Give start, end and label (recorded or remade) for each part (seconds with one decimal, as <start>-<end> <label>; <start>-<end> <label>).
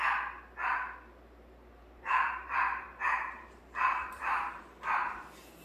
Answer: 0.0-1.7 recorded; 1.7-4.6 remade; 4.6-5.6 recorded